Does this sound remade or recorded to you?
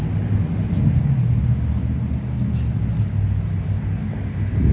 recorded